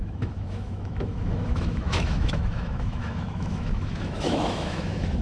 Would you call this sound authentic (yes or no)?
no